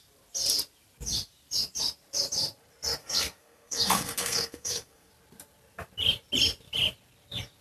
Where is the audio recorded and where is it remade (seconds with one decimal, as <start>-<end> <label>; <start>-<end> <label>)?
0.0-3.0 recorded; 3.0-5.1 remade; 5.1-7.6 recorded